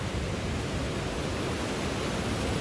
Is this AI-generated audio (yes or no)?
no